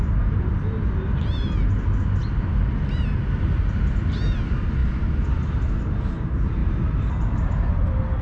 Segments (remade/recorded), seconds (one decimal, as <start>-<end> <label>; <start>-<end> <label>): 0.0-8.2 recorded